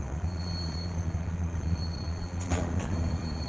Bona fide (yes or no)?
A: no